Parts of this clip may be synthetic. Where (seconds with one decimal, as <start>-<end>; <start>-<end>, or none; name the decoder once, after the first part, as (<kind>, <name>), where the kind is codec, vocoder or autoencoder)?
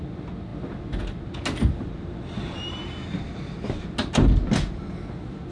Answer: none